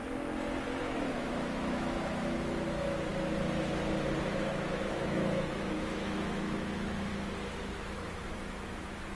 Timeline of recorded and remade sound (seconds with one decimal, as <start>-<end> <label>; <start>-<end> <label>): 0.0-0.8 recorded; 0.8-3.1 remade; 3.1-4.3 recorded; 4.3-7.1 remade; 7.1-7.6 recorded; 7.6-9.1 remade